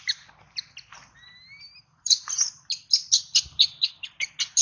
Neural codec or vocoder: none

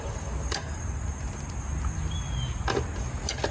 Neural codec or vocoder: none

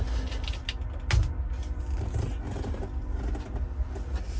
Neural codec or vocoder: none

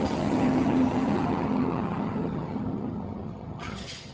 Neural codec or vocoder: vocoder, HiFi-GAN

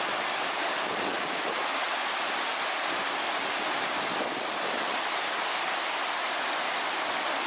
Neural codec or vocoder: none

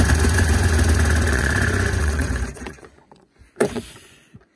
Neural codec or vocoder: vocoder, Vocos